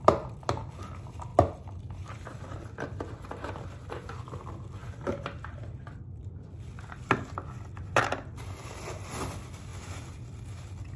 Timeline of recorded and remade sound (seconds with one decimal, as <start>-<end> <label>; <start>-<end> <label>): 0.0-1.3 recorded; 1.3-3.9 remade; 3.9-9.7 recorded; 9.7-10.4 remade; 10.4-11.0 recorded